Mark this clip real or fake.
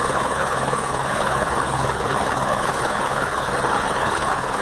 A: fake